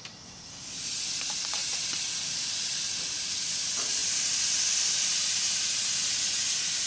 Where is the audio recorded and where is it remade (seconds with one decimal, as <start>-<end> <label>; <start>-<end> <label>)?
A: 0.0-6.9 recorded